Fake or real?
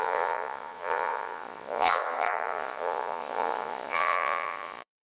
fake